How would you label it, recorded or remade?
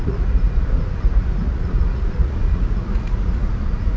remade